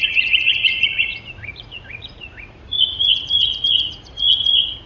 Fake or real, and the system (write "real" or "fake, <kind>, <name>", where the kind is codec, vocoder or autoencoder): fake, vocoder, Vocos